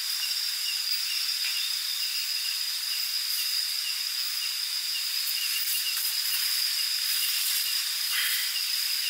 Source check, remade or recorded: recorded